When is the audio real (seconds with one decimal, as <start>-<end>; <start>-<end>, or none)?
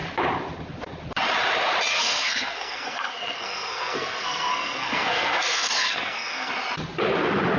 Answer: 0.0-1.9; 6.5-7.6